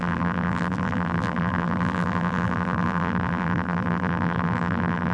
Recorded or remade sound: remade